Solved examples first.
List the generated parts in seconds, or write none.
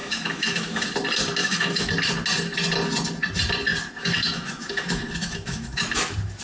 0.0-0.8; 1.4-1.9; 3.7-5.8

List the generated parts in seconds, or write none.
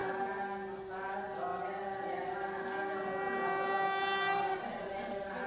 none